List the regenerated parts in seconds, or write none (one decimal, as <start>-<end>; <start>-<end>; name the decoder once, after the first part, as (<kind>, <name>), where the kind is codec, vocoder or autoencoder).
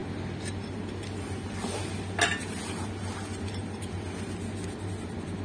none